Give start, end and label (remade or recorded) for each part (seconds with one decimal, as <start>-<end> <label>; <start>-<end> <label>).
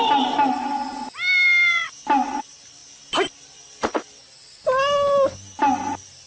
0.0-6.3 recorded